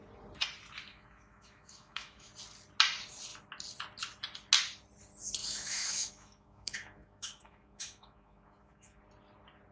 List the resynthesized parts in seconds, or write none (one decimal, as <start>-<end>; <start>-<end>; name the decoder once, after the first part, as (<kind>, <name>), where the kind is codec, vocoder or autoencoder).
0.9-2.3 (autoencoder, DAC-VAE); 5.4-9.0